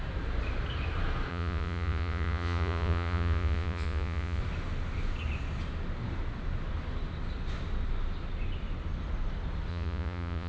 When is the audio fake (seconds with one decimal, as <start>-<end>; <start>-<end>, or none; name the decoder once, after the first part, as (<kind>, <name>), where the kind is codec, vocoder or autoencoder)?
1.3-4.4 (vocoder, Vocos); 9.7-10.5